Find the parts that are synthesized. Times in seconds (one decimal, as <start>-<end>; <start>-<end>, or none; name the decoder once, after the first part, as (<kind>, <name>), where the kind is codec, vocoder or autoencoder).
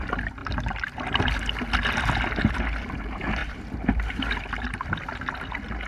none